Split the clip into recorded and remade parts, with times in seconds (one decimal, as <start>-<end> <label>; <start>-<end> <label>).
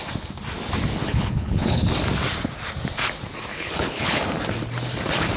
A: 0.0-1.0 recorded; 1.0-1.9 remade; 1.9-3.5 recorded; 3.5-4.2 remade; 4.2-5.4 recorded